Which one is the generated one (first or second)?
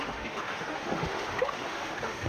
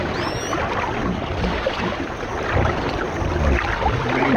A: first